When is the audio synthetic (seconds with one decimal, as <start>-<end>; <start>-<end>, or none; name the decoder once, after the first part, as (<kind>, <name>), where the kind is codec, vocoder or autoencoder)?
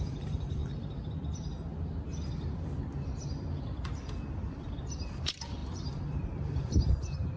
0.0-0.6 (vocoder, BigVGAN v2); 4.5-7.4